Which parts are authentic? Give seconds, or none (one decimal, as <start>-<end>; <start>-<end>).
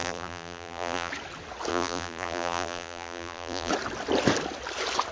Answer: 1.1-1.7; 3.7-5.1